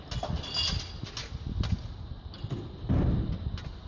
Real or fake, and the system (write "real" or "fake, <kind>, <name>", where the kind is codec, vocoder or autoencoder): real